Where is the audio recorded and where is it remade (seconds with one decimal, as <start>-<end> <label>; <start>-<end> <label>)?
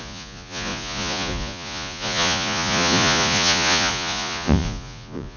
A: 0.0-5.4 remade